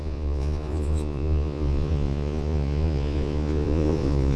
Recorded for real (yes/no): no